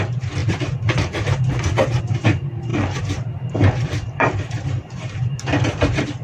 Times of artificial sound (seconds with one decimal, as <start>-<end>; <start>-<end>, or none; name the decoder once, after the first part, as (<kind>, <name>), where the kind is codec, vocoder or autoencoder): 0.0-6.2 (vocoder, BigVGAN v2)

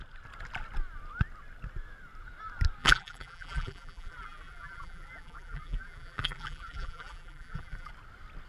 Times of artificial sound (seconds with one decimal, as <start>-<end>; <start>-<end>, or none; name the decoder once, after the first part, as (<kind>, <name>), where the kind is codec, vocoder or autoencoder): 2.8-7.9 (vocoder, BigVGAN v2)

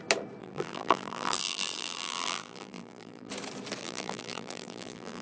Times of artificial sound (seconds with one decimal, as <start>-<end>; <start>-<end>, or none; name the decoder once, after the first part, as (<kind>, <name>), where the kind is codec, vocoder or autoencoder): 0.4-3.3 (vocoder, BigVGAN v2); 3.8-5.2